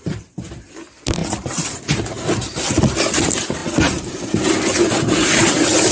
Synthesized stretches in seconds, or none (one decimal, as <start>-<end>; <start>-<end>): none